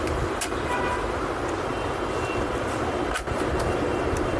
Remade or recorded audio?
recorded